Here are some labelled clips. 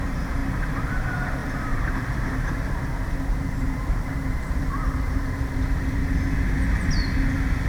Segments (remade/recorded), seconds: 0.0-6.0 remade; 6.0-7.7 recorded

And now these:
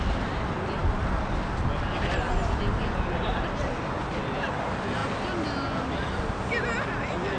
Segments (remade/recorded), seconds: 0.0-7.4 recorded

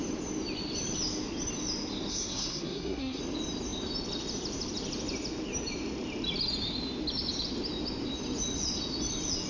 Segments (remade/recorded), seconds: 0.0-2.1 recorded; 2.1-3.2 remade; 3.2-9.5 recorded